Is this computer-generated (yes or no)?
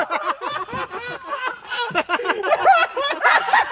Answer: no